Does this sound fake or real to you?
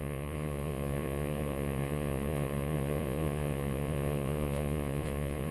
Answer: fake